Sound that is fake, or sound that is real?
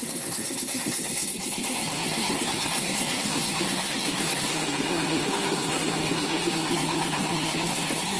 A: fake